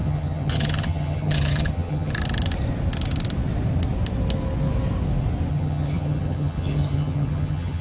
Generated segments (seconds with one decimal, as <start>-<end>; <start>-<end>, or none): 0.0-2.1; 5.5-7.8